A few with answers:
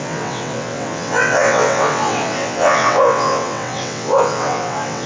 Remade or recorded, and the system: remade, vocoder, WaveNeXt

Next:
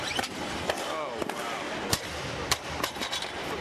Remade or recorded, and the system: remade, vocoder, BigVGAN v2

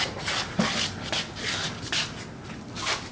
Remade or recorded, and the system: recorded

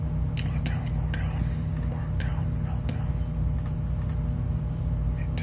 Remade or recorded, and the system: recorded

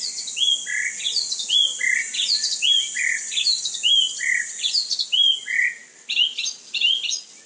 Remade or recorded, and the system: recorded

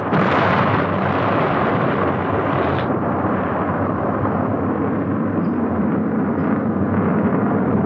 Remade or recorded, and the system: remade, vocoder, BigVGAN v2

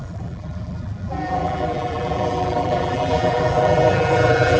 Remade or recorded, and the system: remade, vocoder, BigVGAN v2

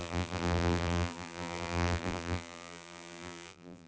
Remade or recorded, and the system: remade, vocoder, BigVGAN v2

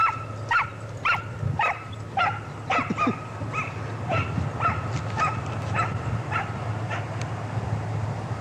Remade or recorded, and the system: recorded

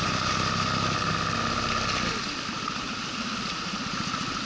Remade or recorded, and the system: recorded